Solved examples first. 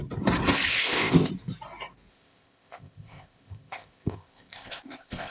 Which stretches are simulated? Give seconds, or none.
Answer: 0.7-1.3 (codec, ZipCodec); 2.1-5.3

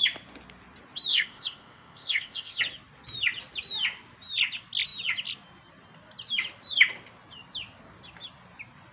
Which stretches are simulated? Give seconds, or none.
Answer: 1.1-2.6 (codec, ZipCodec)